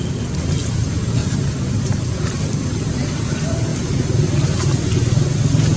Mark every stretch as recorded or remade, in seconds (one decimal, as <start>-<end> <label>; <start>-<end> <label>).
0.0-1.2 recorded; 1.2-2.2 remade; 2.2-3.7 recorded; 3.7-4.8 remade; 4.8-5.8 recorded